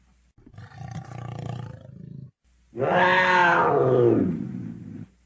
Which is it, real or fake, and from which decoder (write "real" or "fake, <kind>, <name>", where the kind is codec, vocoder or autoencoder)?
real